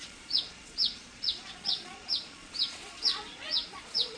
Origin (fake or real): fake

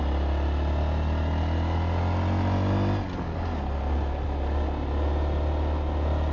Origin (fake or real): real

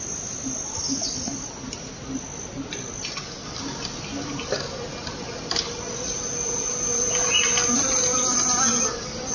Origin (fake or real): real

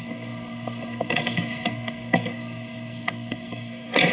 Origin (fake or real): fake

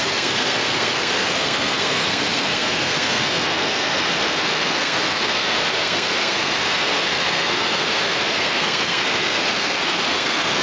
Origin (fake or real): fake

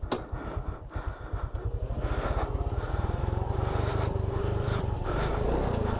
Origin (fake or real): real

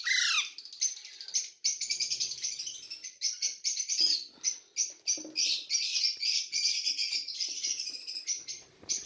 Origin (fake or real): real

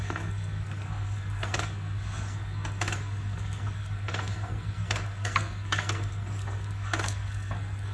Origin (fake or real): fake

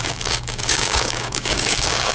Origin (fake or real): fake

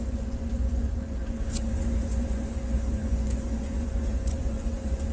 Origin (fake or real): fake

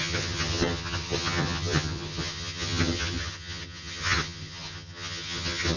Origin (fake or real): fake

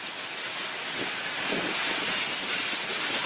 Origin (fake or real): real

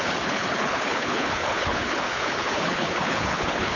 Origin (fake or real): fake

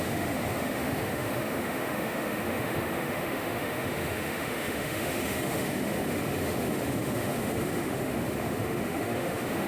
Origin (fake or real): fake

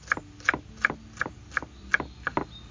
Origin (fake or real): real